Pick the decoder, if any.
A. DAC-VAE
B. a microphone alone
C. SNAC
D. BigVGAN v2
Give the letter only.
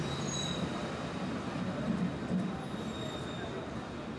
B